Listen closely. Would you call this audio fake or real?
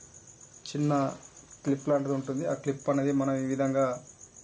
real